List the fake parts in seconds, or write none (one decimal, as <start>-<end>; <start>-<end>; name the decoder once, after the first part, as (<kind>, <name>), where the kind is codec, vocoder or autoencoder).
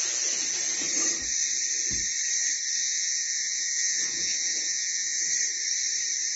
2.8-5.3 (vocoder, Vocos)